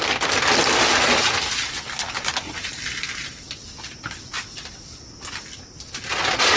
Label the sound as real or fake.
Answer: real